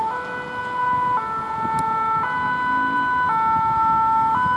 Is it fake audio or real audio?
real